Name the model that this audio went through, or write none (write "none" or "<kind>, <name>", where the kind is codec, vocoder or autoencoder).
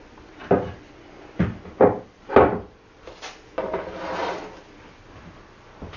none